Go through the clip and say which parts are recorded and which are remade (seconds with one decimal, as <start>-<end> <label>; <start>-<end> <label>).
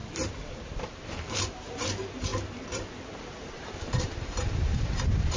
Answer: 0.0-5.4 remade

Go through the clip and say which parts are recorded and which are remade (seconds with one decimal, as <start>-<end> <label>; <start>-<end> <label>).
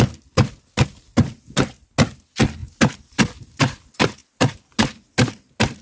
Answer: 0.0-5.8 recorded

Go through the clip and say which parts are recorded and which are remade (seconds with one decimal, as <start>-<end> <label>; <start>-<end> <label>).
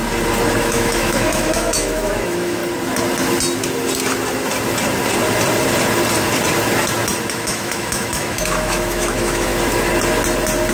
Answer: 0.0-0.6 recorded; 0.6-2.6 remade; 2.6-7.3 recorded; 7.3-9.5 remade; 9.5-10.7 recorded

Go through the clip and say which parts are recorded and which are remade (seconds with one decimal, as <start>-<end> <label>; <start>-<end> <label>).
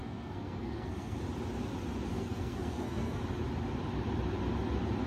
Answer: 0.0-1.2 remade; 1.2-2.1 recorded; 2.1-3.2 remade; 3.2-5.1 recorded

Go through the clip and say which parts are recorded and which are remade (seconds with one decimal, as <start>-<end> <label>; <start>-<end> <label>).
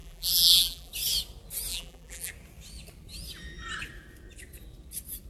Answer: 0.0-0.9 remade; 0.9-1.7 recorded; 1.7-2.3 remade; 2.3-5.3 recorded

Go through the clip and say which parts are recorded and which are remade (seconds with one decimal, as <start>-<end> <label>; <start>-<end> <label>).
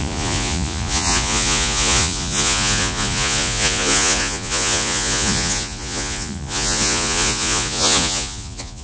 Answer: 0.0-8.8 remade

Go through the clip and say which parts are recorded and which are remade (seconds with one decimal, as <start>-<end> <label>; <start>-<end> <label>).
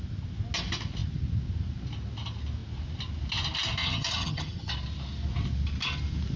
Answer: 0.0-3.8 recorded; 3.8-4.7 remade; 4.7-6.4 recorded